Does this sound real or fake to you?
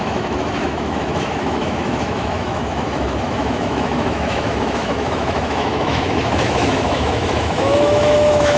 fake